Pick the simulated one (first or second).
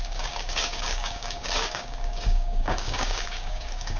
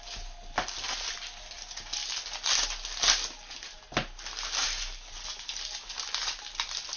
first